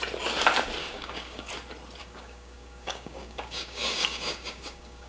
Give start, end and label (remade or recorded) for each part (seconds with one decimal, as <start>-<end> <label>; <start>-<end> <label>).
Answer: 0.0-0.8 recorded; 0.8-1.5 remade; 1.5-2.0 recorded; 2.0-5.1 remade